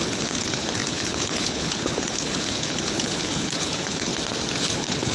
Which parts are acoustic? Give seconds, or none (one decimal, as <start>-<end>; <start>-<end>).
4.1-4.6